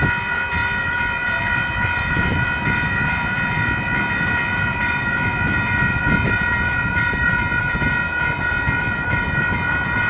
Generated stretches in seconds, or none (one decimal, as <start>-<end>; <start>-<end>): none